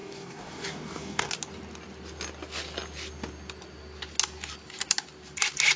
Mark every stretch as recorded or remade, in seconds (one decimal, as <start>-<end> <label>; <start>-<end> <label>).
0.0-1.3 remade; 1.3-5.8 recorded